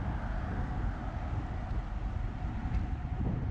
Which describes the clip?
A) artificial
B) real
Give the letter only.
B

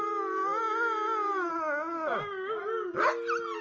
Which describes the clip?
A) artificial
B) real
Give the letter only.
B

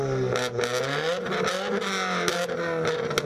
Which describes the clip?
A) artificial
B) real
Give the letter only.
B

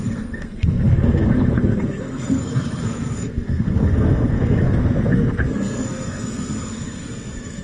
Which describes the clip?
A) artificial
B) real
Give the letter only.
A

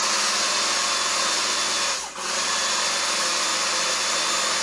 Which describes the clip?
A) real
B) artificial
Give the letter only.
A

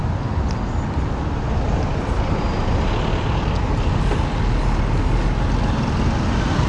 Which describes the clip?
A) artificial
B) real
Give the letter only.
B